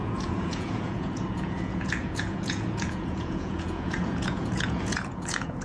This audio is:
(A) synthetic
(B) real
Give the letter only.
A